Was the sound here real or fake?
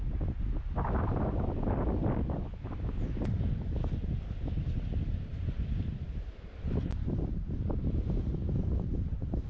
real